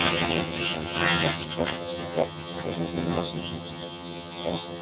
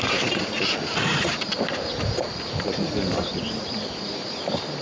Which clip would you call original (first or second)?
second